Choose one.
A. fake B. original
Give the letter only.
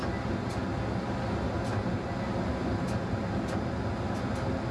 B